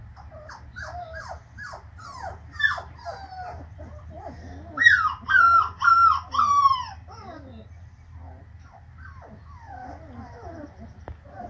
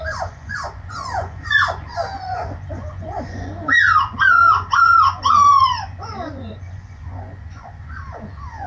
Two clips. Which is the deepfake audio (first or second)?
second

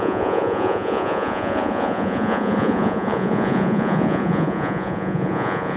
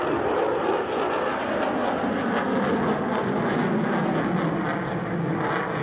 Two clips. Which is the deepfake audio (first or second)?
first